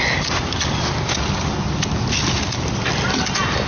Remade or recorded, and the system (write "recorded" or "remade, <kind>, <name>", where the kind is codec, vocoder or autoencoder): recorded